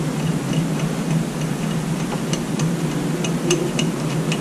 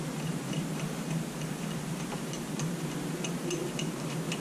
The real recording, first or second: first